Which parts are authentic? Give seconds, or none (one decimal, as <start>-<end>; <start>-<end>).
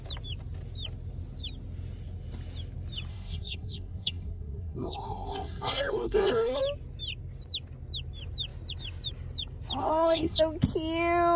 0.0-3.1; 6.6-9.8; 10.4-11.4